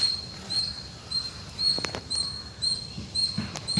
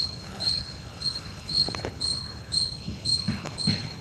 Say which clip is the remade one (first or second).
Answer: second